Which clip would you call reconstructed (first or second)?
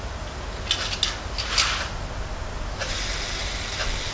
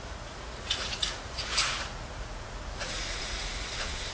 second